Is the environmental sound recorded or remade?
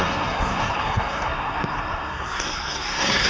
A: remade